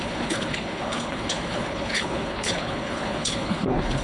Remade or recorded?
remade